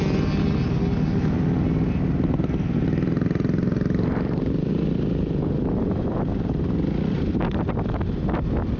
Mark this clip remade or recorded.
recorded